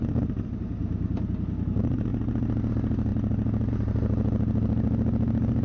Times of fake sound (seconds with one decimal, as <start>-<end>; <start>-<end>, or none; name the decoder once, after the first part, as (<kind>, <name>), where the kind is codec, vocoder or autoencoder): none